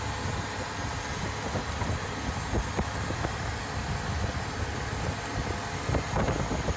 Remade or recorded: recorded